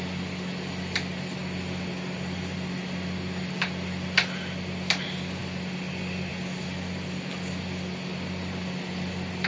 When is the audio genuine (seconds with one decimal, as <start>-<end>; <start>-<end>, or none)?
0.0-9.5